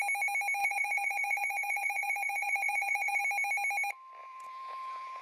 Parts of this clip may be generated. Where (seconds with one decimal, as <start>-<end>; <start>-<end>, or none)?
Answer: 0.6-3.2; 4.2-5.2